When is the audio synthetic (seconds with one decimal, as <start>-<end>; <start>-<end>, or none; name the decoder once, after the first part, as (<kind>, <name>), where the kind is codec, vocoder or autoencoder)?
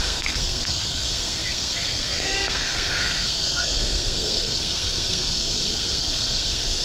0.0-6.8 (codec, SNAC)